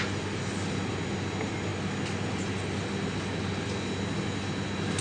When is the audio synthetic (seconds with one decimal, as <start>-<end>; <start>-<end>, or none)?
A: none